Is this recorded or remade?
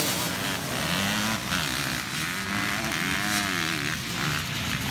recorded